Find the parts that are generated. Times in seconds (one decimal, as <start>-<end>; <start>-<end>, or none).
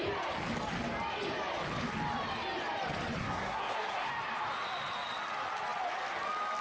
3.2-4.1